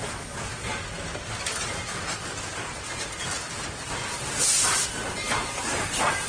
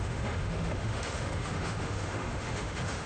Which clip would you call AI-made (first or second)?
second